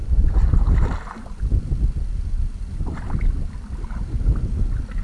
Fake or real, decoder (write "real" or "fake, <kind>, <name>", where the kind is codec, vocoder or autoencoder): real